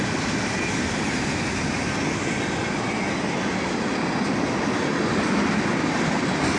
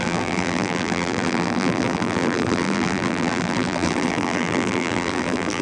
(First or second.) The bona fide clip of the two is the first